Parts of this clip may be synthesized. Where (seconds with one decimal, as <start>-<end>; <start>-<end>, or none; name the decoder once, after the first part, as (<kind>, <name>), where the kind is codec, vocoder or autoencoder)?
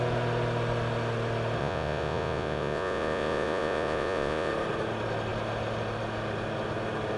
1.6-4.5 (vocoder, Vocos)